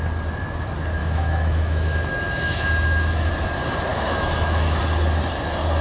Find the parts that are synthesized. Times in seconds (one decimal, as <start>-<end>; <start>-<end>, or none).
1.0-3.3; 3.9-4.8